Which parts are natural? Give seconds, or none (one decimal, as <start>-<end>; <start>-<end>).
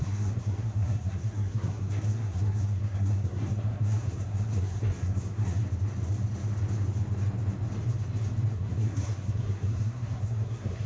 5.6-8.5